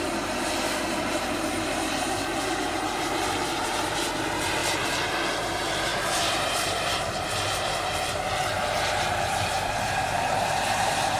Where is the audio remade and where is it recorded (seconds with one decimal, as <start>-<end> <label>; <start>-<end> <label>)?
0.0-4.6 remade; 4.6-5.3 recorded; 5.3-11.2 remade